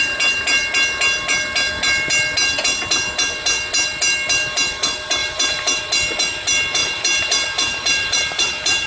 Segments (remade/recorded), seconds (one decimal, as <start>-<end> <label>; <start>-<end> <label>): 0.0-5.2 recorded; 5.2-5.8 remade; 5.8-6.8 recorded; 6.8-8.9 remade